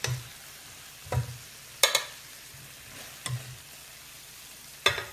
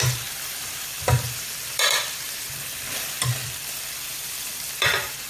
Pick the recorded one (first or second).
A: first